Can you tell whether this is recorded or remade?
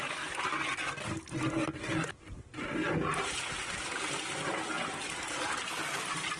recorded